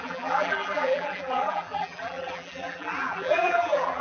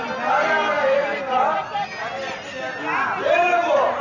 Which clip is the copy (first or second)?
first